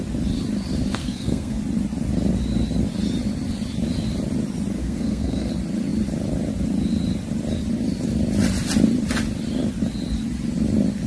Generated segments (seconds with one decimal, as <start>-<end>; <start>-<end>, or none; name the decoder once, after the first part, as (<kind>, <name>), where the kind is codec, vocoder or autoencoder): 1.0-1.6 (codec, SNAC); 4.8-5.5